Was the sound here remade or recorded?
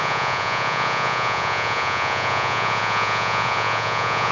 remade